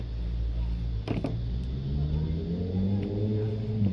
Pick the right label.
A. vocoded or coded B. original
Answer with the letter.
B